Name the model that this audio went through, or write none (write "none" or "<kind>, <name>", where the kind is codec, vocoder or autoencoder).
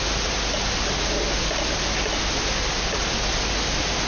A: none